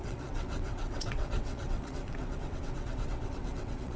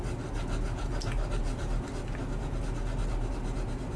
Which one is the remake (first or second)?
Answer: first